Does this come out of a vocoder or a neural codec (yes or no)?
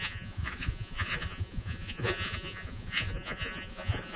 yes